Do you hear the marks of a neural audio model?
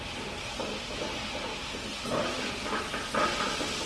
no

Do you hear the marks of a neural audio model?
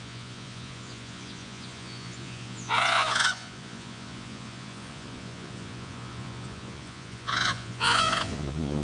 yes